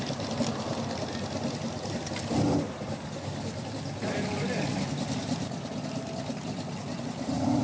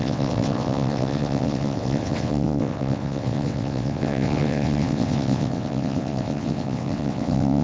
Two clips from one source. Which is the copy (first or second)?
second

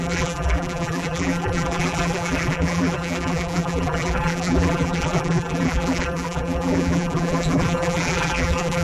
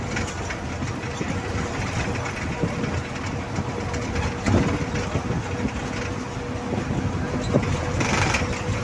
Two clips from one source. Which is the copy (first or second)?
first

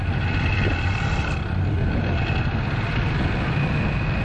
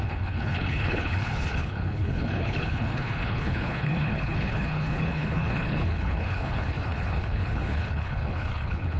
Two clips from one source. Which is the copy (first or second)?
second